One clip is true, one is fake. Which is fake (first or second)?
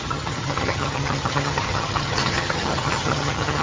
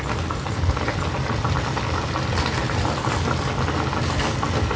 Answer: first